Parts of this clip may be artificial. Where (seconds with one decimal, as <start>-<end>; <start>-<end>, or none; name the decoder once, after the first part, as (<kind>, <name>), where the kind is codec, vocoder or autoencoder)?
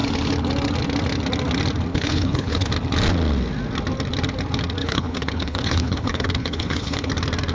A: 1.9-2.7 (codec, HILCodec); 4.8-7.1